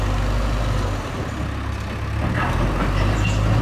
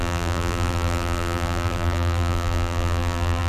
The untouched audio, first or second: first